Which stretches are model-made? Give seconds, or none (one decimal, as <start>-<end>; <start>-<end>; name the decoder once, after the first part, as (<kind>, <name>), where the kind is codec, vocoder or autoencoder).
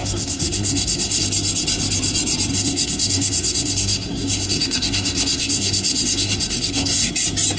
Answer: 0.0-1.2 (codec, SNAC); 2.5-7.1